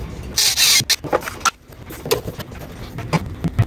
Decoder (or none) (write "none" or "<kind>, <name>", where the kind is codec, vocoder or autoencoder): none